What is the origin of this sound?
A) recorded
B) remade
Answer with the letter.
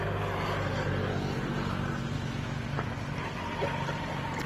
A